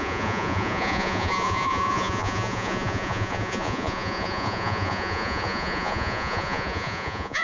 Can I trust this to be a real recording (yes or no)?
no